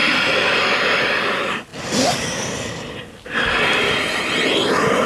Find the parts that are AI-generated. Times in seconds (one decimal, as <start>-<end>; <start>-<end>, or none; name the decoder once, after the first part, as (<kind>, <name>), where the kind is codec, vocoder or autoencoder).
none